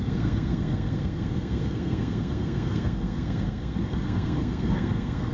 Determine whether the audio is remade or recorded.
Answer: remade